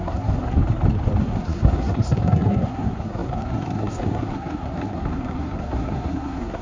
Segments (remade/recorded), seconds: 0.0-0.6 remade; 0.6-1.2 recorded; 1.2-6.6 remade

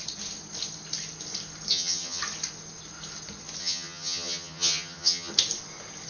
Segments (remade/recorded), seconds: 0.0-1.7 recorded; 1.7-2.2 remade; 2.2-3.6 recorded; 3.6-5.3 remade; 5.3-6.1 recorded